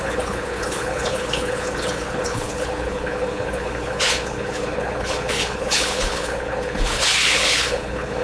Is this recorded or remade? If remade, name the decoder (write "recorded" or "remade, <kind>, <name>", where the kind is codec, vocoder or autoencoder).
remade, codec, HILCodec